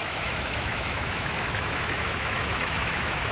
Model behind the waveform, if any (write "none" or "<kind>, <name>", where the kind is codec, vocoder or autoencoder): autoencoder, DAC-VAE